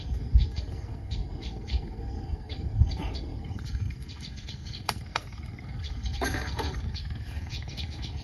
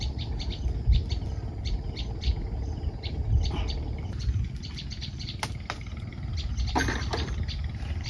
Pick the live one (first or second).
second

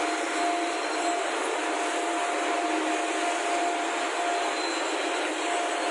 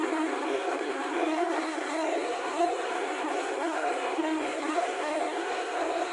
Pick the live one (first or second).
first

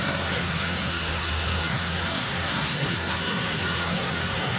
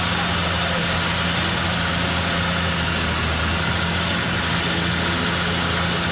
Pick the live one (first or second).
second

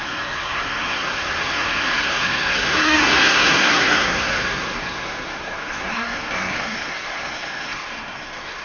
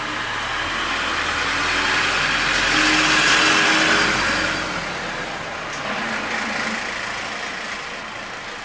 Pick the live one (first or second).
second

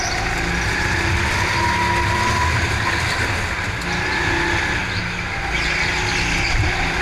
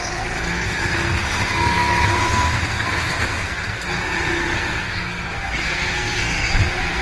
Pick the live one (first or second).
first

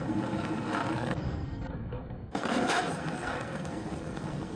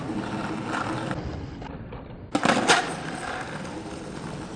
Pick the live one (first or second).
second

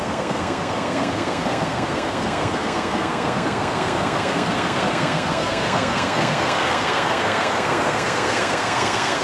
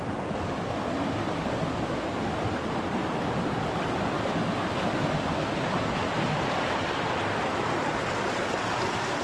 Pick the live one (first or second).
second